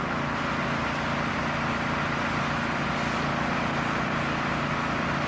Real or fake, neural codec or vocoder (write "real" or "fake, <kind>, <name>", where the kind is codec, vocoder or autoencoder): real